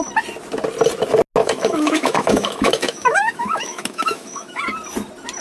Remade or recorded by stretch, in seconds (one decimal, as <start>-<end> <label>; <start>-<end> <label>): 0.0-1.4 recorded; 1.4-4.6 remade; 4.6-5.4 recorded